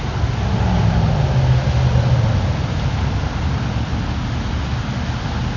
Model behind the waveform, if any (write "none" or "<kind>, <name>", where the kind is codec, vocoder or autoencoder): none